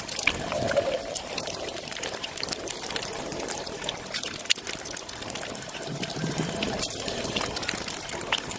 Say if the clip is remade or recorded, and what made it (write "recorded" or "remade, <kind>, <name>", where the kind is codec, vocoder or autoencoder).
recorded